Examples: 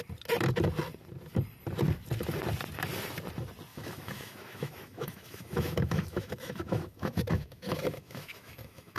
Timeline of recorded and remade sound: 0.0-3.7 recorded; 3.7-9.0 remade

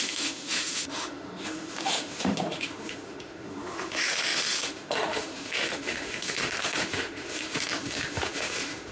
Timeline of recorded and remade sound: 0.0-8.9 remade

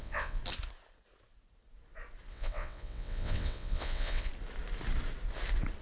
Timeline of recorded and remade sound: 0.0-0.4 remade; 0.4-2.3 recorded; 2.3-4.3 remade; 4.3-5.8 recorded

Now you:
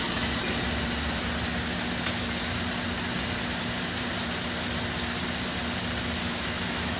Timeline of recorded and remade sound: 0.0-6.2 recorded; 6.2-7.0 remade

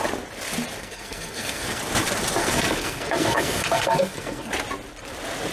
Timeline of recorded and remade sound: 0.0-0.8 recorded; 0.8-1.8 remade; 1.8-2.4 recorded; 2.4-4.5 remade; 4.5-5.5 recorded

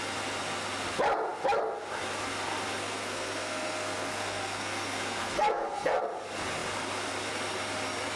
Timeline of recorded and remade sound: 0.0-2.8 recorded; 2.8-6.0 remade; 6.0-8.2 recorded